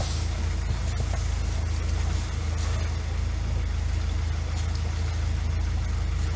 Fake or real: real